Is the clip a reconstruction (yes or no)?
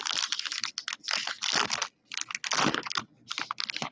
no